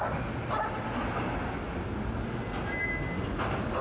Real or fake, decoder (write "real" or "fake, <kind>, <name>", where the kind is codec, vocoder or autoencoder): real